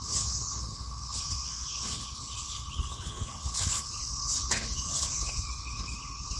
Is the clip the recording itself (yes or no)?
no